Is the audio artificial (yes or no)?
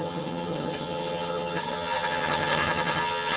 yes